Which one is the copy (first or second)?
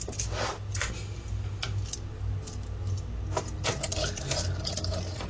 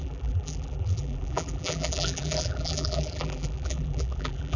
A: second